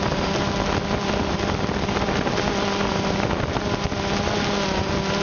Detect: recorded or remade recorded